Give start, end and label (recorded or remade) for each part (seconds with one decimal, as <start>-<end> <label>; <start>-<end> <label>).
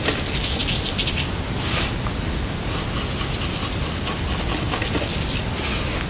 0.0-6.1 recorded